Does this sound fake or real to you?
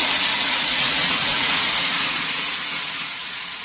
fake